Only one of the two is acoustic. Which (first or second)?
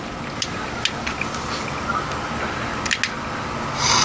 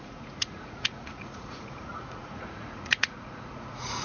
first